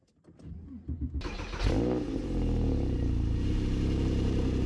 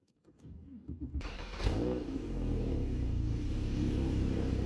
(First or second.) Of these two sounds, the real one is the first